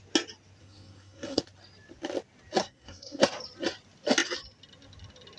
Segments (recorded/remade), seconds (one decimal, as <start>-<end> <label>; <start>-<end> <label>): 0.0-0.6 recorded; 0.6-1.4 remade; 1.4-2.6 recorded; 2.6-3.2 remade; 3.2-5.4 recorded